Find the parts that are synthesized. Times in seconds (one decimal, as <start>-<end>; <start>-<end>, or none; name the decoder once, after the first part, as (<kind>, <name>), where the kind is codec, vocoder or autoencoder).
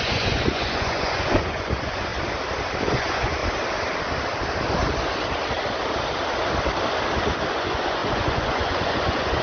0.0-2.1 (vocoder, Vocos); 2.8-3.4; 7.5-9.4